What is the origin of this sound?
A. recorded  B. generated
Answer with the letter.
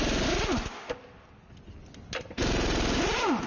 A